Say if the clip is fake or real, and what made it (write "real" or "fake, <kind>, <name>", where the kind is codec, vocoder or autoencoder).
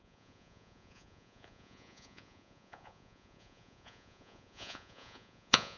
fake, vocoder, Vocos